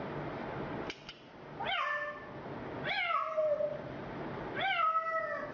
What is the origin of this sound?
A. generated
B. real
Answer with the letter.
B